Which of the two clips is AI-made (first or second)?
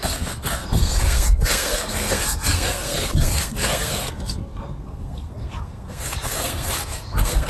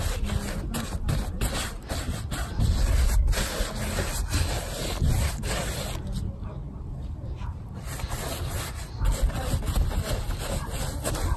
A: first